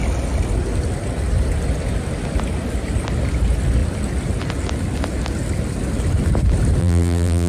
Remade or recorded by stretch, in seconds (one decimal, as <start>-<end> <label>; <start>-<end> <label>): 0.0-6.8 recorded; 6.8-7.5 remade